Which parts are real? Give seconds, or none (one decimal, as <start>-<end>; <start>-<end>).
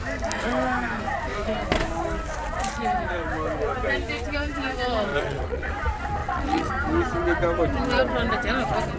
0.0-5.1; 5.7-6.2; 6.7-9.0